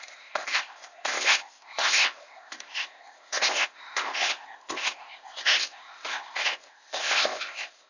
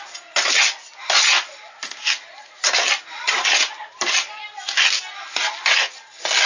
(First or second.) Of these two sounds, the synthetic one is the first